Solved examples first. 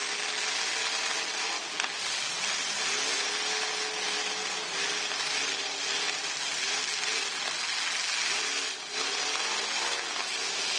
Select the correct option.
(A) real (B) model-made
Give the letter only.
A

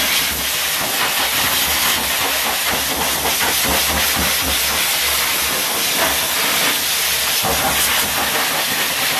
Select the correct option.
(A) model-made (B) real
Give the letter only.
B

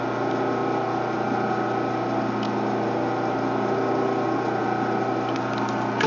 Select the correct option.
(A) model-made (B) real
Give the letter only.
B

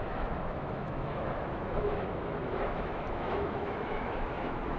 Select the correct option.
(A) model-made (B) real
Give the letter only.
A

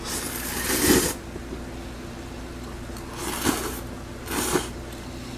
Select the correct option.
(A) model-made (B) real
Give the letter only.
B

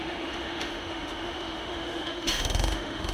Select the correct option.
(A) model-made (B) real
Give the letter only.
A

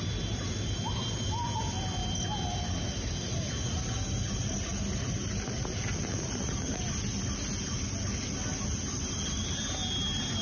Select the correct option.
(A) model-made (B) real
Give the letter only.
B